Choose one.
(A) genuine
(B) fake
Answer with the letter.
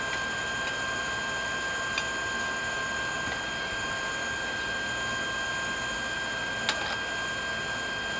A